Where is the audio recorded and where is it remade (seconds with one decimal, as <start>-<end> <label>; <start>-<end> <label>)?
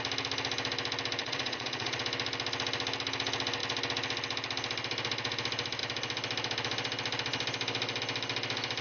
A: 0.0-1.2 recorded; 1.2-2.0 remade; 2.0-8.8 recorded